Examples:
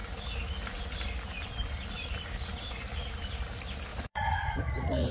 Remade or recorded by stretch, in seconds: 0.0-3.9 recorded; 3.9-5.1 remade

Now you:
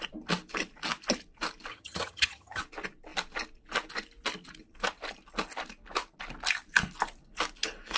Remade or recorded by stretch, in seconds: 0.0-1.7 recorded; 1.7-2.6 remade; 2.6-8.0 recorded